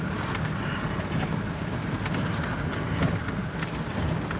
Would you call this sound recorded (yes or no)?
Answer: yes